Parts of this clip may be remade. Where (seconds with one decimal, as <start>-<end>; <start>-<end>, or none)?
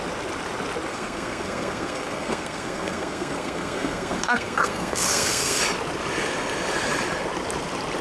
0.9-5.6